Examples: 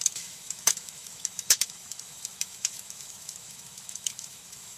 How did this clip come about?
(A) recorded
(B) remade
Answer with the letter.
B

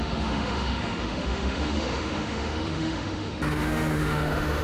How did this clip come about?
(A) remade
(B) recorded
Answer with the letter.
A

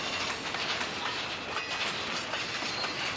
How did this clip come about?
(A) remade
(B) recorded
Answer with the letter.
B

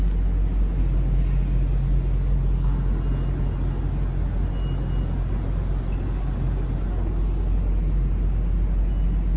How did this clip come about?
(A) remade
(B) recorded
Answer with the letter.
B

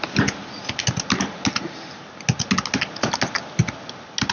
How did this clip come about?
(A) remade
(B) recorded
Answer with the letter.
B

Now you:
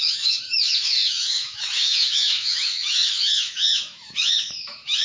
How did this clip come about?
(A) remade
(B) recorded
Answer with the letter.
A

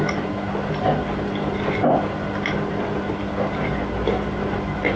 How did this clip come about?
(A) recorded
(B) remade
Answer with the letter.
A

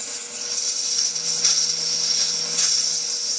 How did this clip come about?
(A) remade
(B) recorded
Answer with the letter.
B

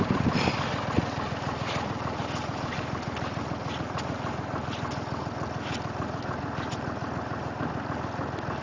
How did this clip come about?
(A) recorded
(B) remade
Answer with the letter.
A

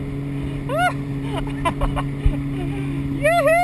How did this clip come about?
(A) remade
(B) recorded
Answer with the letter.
B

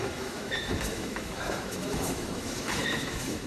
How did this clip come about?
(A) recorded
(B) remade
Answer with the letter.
B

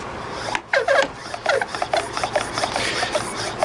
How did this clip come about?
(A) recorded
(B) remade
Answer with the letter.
A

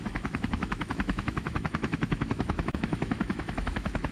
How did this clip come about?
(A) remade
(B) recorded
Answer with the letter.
A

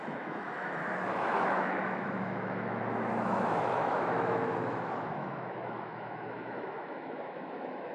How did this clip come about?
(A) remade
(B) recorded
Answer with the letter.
A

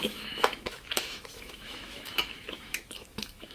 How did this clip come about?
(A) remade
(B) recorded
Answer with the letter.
A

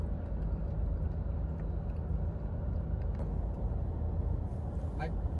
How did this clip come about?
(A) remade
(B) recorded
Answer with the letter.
B